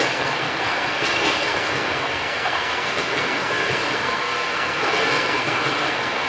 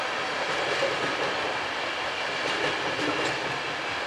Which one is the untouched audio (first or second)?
second